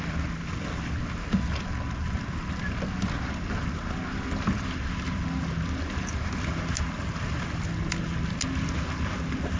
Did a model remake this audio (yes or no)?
no